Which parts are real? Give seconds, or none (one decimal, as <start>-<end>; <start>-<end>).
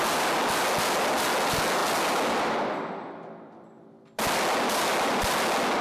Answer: 0.0-5.8